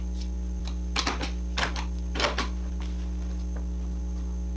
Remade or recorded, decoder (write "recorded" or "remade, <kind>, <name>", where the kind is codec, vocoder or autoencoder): recorded